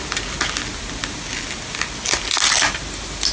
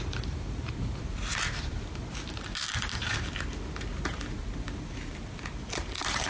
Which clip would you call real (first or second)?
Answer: first